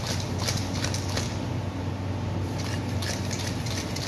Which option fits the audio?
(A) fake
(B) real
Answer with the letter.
B